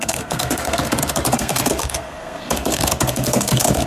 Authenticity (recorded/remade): remade